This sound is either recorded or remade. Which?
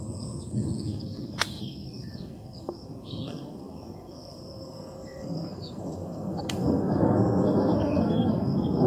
remade